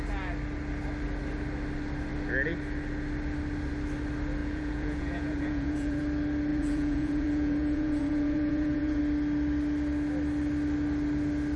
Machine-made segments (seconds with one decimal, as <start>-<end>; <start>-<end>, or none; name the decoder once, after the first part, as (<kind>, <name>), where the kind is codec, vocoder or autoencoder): 4.4-6.0 (vocoder, Vocos); 6.5-9.0